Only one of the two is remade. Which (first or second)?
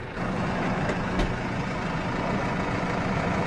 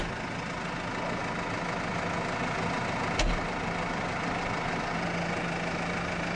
first